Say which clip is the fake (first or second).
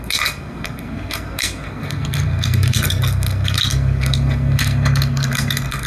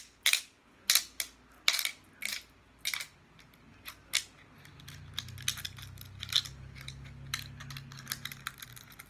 first